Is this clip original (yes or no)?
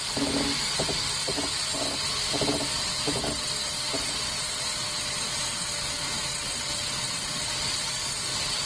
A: yes